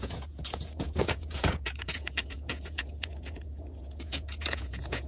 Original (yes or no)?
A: no